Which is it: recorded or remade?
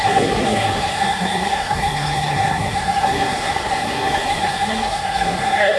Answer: remade